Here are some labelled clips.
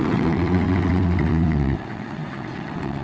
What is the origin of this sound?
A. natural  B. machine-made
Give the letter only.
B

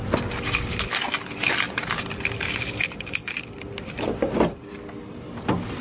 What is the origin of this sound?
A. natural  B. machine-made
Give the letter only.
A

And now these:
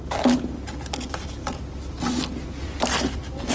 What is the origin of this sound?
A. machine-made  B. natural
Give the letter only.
B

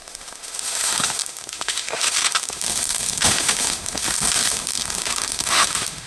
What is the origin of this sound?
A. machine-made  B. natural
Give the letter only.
A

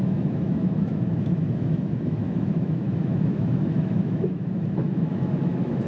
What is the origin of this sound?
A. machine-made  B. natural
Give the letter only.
A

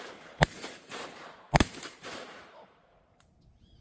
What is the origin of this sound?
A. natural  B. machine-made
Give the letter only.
B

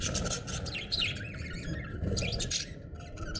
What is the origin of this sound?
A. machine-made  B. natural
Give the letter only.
A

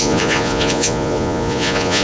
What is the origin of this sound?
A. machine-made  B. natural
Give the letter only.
A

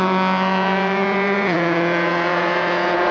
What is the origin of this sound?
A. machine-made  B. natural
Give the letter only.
A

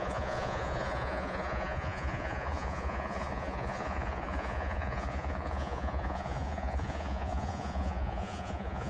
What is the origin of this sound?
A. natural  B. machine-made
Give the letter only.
B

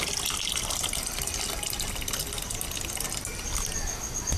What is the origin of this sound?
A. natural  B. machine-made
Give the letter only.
A